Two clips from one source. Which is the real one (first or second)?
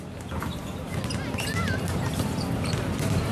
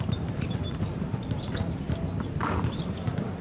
first